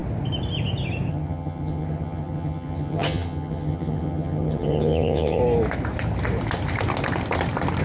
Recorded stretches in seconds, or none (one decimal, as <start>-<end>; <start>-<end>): 0.0-1.1; 5.4-7.8